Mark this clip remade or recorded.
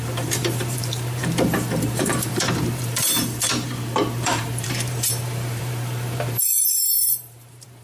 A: remade